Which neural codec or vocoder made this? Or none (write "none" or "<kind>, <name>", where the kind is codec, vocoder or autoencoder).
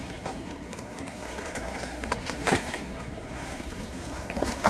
codec, SNAC